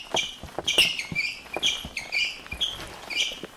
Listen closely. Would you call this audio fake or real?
fake